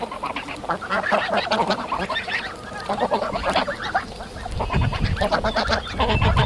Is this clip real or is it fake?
real